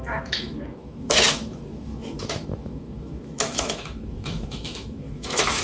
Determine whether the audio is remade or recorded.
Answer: remade